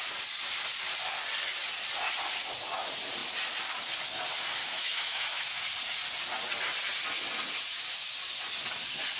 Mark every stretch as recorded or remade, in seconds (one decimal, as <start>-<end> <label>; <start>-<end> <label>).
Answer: 0.0-4.6 recorded; 4.6-5.6 remade; 5.6-9.2 recorded